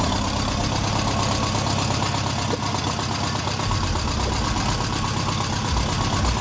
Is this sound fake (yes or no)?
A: no